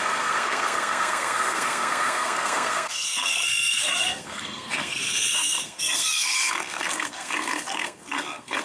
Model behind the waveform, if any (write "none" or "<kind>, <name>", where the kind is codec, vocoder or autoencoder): codec, SNAC